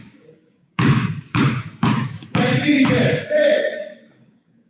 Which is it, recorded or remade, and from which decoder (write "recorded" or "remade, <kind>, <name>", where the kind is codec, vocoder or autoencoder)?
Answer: remade, codec, DAC